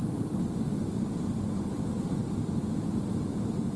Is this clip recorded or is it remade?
recorded